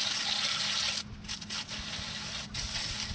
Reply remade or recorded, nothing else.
recorded